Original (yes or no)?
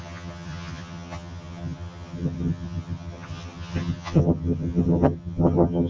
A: no